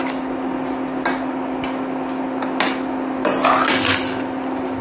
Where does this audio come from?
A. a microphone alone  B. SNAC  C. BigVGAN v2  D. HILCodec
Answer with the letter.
A